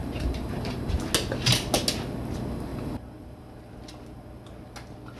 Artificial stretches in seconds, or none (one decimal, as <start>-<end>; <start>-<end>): 0.0-1.0; 2.7-3.7